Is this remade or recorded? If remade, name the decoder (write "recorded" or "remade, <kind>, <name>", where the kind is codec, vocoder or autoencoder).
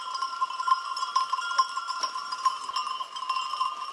remade, vocoder, BigVGAN v2